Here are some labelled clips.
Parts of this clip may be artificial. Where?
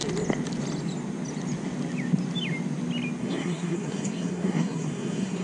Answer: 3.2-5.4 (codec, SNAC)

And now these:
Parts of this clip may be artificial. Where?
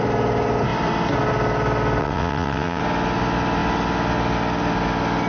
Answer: 2.0-2.8 (vocoder, WaveNeXt)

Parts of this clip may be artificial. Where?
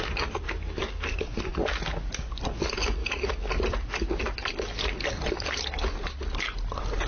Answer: none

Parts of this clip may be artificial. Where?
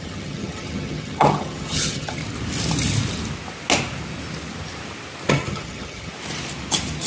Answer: 0.0-2.2 (vocoder, HiFi-GAN); 5.3-6.1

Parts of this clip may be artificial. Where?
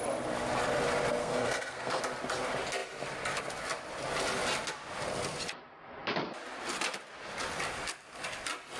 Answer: 1.2-2.0 (codec, SNAC)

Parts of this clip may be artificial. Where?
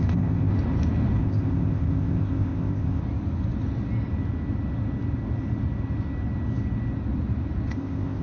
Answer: 0.0-0.5 (codec, ZipCodec); 1.2-3.0; 7.7-8.2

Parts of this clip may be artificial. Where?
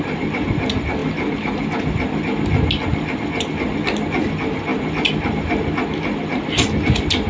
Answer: none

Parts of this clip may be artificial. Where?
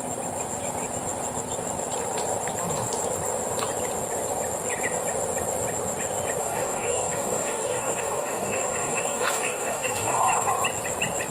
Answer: 6.4-10.5 (codec, DAC)